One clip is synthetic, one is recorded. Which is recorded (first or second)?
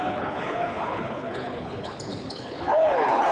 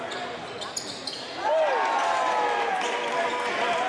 second